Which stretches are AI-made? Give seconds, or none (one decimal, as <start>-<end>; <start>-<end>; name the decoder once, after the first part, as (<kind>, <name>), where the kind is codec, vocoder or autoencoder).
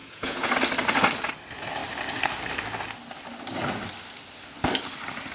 0.0-0.5 (vocoder, Vocos)